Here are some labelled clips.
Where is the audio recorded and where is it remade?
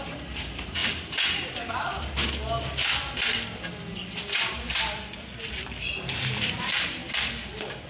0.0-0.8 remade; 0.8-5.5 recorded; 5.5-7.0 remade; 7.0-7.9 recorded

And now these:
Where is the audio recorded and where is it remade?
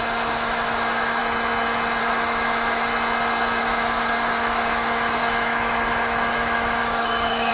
0.0-1.2 remade; 1.2-2.0 recorded; 2.0-2.9 remade; 2.9-3.6 recorded; 3.6-7.5 remade